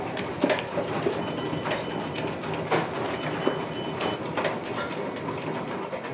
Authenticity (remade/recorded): recorded